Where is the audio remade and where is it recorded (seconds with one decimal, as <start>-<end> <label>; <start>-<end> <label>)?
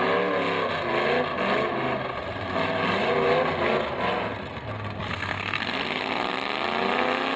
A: 0.0-5.1 recorded; 5.1-5.6 remade; 5.6-7.4 recorded